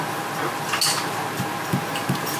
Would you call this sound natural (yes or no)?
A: yes